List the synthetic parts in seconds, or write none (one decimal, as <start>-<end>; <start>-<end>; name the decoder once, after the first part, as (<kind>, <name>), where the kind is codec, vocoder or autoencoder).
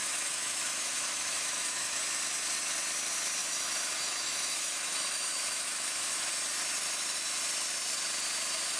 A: 0.0-2.0 (autoencoder, DAC-VAE); 3.4-6.3